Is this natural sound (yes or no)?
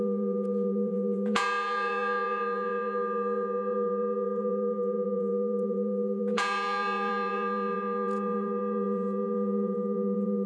no